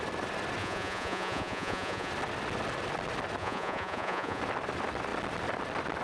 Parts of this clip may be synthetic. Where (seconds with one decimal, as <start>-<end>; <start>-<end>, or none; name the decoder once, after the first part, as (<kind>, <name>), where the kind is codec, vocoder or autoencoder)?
0.6-2.1 (vocoder, Vocos); 3.4-4.4